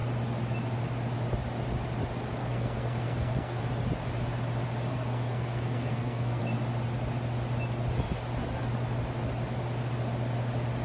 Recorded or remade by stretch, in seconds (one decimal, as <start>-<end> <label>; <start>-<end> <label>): 0.0-2.4 recorded; 2.4-3.6 remade; 3.6-4.9 recorded; 4.9-6.4 remade; 6.4-10.8 recorded

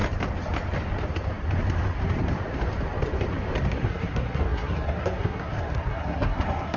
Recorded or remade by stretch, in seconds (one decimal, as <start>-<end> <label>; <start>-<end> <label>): 0.0-3.7 recorded; 3.7-6.8 remade